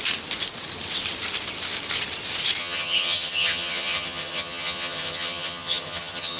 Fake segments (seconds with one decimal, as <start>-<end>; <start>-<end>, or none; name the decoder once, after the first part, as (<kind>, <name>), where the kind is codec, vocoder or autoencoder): 2.6-6.4 (vocoder, HiFi-GAN)